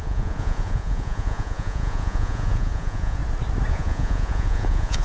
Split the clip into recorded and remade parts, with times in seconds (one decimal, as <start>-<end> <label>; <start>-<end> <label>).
0.0-3.2 remade; 3.2-3.7 recorded; 3.7-5.0 remade